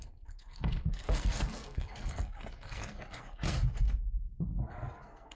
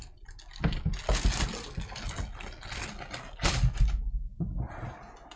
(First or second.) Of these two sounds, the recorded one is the second